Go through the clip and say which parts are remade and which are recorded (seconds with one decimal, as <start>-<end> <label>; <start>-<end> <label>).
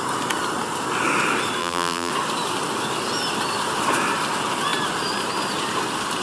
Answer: 0.0-1.6 recorded; 1.6-2.1 remade; 2.1-6.2 recorded